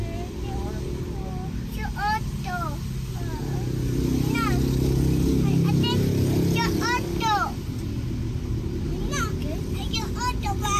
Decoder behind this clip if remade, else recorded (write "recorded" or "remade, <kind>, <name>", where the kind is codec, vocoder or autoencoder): recorded